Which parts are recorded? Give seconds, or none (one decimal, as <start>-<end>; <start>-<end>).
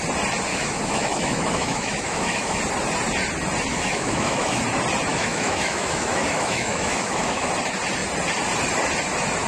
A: 0.0-0.5; 2.6-3.7; 4.6-5.1; 7.5-9.5